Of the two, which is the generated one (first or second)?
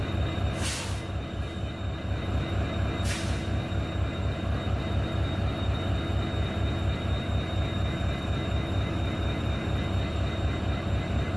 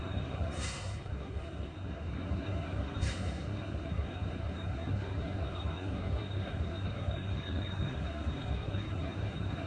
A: second